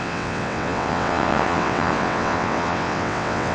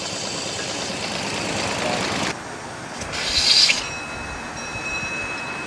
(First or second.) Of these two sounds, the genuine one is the second